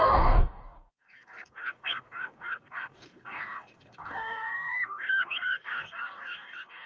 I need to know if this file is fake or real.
fake